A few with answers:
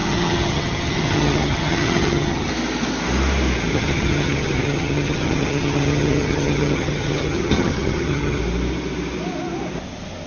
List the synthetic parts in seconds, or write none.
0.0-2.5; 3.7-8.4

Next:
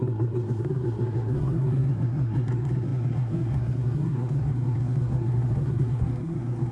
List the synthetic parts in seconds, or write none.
0.0-6.7

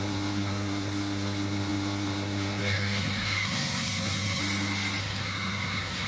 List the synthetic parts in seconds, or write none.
0.0-4.4; 5.0-6.1

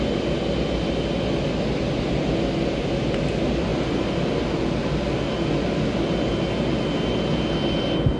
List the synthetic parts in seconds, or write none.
none